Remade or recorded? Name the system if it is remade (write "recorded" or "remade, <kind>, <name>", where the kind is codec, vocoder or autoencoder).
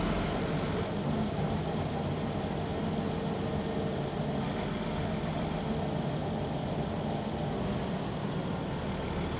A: recorded